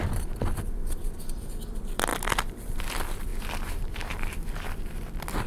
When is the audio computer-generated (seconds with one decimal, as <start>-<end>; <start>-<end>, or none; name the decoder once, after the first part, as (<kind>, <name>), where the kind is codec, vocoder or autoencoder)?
0.0-5.5 (vocoder, BigVGAN v2)

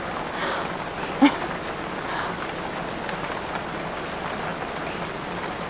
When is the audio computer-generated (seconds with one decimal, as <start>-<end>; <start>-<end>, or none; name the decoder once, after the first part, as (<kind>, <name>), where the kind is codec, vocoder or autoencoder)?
none

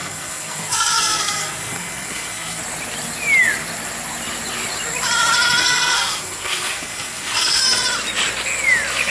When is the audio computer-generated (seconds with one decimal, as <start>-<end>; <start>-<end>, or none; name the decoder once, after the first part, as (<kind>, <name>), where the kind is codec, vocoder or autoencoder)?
0.0-2.6 (codec, SNAC); 5.6-7.6

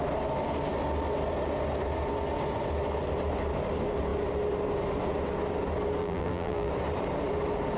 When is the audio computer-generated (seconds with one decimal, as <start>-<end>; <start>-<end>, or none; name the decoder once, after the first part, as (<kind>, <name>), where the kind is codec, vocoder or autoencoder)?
6.0-6.7 (vocoder, BigVGAN v2)

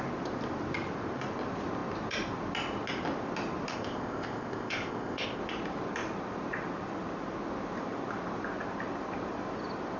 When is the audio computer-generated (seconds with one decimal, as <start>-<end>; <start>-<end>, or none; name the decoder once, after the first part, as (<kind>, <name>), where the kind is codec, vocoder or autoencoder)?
3.7-5.4 (codec, ZipCodec)

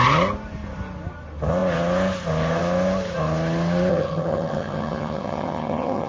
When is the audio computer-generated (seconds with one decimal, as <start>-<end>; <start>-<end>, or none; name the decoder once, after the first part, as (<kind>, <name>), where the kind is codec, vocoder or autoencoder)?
3.9-6.1 (vocoder, HiFi-GAN)

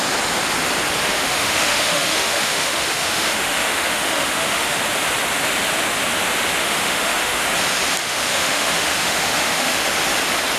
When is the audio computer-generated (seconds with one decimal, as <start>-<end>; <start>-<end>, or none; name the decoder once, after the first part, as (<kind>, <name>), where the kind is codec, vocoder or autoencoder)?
1.0-4.8 (autoencoder, DAC-VAE); 6.6-7.4; 8.0-9.9

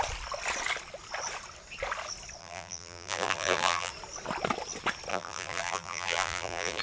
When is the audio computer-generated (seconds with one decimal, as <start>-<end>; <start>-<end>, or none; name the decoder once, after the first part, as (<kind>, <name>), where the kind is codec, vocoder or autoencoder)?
2.4-3.9 (vocoder, BigVGAN v2); 5.1-6.8